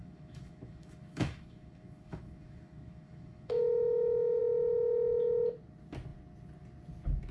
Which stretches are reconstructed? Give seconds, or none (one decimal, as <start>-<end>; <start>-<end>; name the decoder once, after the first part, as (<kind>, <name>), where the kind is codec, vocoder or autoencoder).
0.0-4.4 (autoencoder, DAC-VAE)